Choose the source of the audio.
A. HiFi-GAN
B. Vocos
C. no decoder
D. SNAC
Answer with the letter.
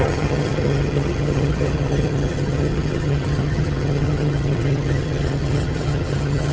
A